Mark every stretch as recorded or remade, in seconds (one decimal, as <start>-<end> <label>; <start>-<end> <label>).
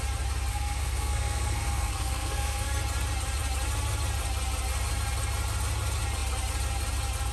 0.0-0.5 recorded; 0.5-2.8 remade; 2.8-7.3 recorded